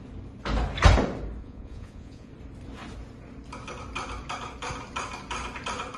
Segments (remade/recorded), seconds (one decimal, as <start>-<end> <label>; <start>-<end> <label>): 0.0-1.4 recorded; 1.4-2.3 remade; 2.3-6.0 recorded